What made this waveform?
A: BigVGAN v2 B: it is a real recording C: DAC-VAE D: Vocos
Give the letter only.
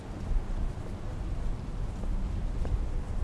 B